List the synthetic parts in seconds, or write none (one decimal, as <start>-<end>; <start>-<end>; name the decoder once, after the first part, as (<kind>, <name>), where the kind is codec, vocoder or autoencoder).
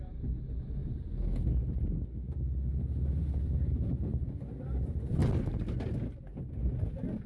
none